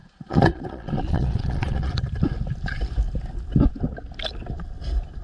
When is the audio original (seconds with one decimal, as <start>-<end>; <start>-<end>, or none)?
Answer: 1.9-5.2